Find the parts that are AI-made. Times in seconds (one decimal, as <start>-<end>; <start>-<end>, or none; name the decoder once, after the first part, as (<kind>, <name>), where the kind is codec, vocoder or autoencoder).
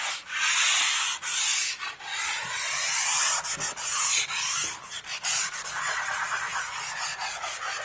2.1-3.2 (vocoder, BigVGAN v2)